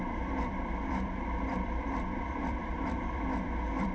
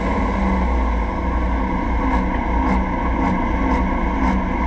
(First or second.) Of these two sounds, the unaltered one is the second